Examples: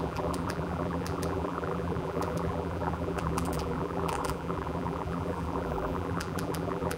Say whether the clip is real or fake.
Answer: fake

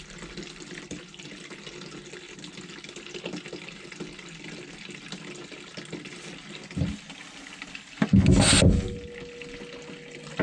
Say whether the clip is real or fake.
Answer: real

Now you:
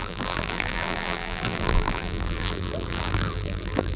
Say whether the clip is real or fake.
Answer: fake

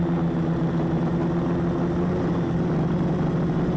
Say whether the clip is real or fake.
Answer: real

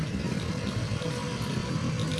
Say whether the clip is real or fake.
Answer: real